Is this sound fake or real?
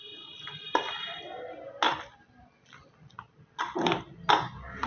real